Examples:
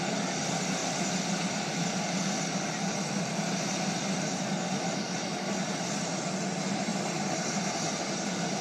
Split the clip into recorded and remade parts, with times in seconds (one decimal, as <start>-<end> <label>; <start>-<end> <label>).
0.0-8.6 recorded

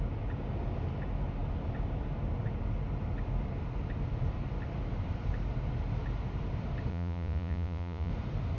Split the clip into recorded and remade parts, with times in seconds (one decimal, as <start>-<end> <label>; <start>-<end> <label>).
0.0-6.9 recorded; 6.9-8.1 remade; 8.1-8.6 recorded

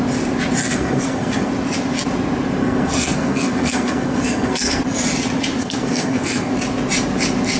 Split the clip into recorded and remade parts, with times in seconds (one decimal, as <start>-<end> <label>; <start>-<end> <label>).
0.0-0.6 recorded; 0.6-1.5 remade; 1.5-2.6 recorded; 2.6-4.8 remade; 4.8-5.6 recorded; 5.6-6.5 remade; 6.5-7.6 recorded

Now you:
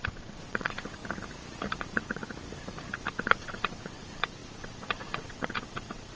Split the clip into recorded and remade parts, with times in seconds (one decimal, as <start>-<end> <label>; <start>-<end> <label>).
0.0-1.0 remade; 1.0-1.8 recorded; 1.8-2.2 remade; 2.2-3.1 recorded; 3.1-6.2 remade

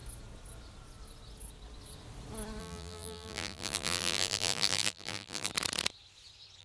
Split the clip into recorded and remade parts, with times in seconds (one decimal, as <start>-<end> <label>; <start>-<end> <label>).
0.0-2.6 recorded; 2.6-5.5 remade; 5.5-6.6 recorded

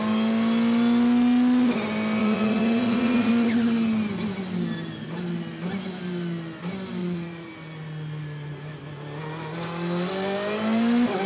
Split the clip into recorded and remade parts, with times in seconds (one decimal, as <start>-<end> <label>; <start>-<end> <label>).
0.0-2.2 recorded; 2.2-3.3 remade; 3.3-7.0 recorded; 7.0-7.5 remade; 7.5-11.3 recorded

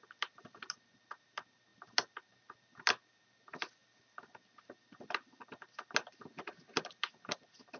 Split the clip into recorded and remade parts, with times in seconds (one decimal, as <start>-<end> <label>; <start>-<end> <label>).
0.0-7.8 recorded

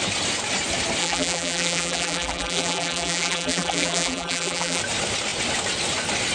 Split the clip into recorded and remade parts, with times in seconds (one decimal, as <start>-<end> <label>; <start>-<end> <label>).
0.0-1.0 recorded; 1.0-4.8 remade; 4.8-6.3 recorded